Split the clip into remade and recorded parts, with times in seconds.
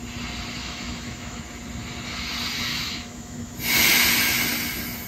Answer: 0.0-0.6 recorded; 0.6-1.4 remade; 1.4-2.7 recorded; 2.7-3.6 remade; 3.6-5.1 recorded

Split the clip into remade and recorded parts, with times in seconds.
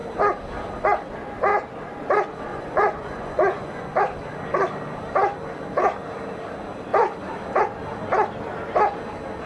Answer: 0.0-2.5 recorded; 2.5-4.0 remade; 4.0-9.5 recorded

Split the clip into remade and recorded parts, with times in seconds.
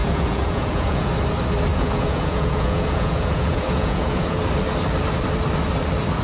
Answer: 0.0-1.1 remade; 1.1-1.7 recorded; 1.7-4.4 remade; 4.4-6.2 recorded